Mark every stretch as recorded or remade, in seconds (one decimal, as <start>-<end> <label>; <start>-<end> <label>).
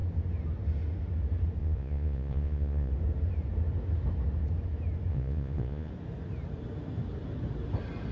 0.0-1.6 recorded; 1.6-2.9 remade; 2.9-5.1 recorded; 5.1-5.9 remade; 5.9-8.1 recorded